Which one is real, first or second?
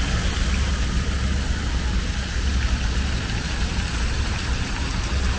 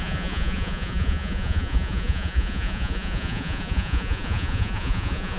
first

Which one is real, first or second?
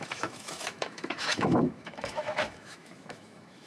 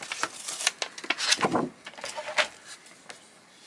second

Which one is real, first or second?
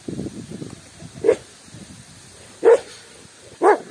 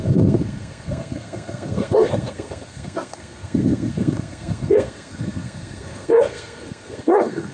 first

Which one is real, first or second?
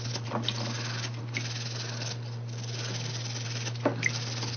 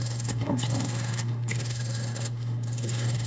first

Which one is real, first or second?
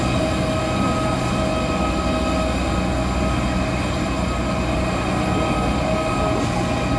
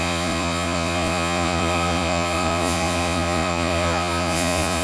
first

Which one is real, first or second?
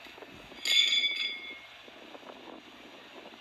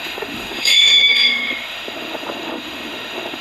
first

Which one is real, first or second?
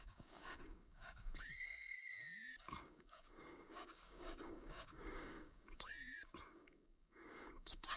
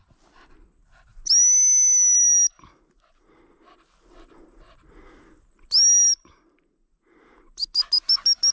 second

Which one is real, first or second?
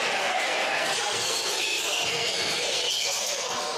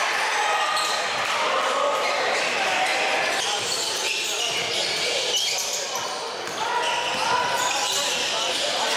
second